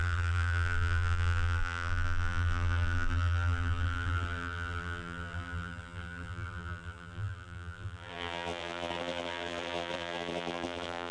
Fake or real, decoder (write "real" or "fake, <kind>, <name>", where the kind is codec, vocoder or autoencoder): fake, vocoder, BigVGAN v2